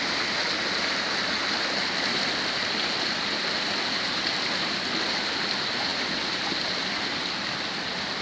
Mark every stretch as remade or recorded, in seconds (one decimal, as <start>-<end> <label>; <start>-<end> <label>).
0.0-8.2 recorded